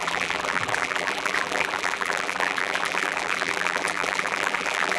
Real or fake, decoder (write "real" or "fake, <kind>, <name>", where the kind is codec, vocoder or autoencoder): fake, vocoder, BigVGAN v2